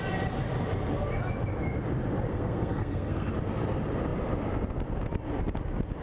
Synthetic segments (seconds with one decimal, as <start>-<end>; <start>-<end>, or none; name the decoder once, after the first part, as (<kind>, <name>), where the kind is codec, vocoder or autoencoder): 2.3-3.3 (codec, SNAC)

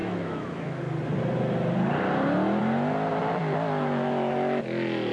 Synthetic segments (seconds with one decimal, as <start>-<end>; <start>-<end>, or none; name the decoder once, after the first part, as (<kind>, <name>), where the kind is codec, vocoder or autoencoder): 0.0-0.8 (autoencoder, DAC-VAE)

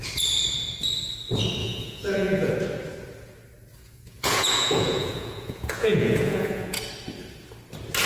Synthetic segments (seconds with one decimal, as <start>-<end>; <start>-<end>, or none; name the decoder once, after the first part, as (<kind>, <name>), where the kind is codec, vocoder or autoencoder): 1.6-2.5 (vocoder, Vocos); 3.7-6.8

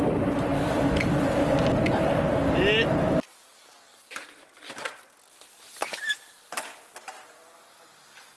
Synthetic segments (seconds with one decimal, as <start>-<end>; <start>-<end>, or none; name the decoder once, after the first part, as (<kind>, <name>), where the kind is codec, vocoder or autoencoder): none